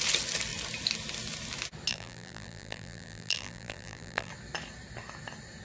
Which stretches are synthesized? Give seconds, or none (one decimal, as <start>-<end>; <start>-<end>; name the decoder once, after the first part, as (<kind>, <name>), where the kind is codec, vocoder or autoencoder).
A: 1.9-4.3 (vocoder, BigVGAN v2)

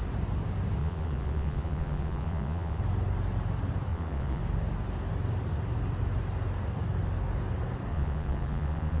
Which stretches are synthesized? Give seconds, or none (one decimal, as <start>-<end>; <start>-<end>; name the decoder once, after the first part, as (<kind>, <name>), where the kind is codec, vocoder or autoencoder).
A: 0.8-2.8 (vocoder, Vocos); 3.9-4.4; 7.9-9.0

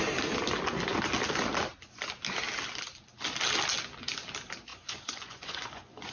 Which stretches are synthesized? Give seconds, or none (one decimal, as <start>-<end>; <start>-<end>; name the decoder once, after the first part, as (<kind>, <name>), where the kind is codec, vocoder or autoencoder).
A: 4.7-6.1 (vocoder, Vocos)

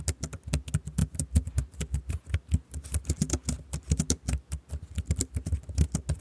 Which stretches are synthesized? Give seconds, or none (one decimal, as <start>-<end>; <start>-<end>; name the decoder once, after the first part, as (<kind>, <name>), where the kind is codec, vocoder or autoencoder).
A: none